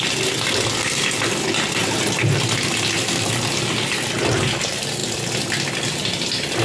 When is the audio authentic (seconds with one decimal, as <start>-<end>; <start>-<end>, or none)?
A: 0.0-6.6